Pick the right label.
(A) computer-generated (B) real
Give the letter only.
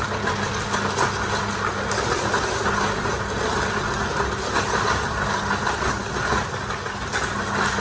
B